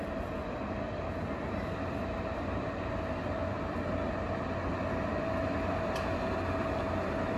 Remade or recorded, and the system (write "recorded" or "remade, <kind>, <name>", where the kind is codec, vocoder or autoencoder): recorded